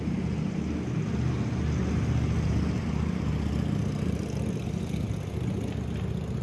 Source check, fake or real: real